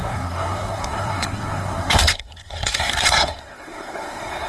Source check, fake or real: fake